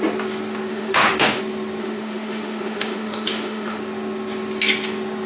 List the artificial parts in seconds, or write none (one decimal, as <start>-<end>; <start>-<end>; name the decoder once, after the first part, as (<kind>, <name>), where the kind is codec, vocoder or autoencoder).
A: 0.7-1.4 (autoencoder, DAC-VAE); 1.8-3.8